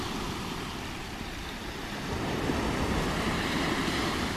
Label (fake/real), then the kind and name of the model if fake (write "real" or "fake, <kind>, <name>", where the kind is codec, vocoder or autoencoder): fake, vocoder, BigVGAN v2